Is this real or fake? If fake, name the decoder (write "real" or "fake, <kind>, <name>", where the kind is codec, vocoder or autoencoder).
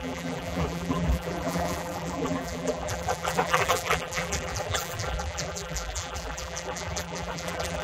fake, vocoder, BigVGAN v2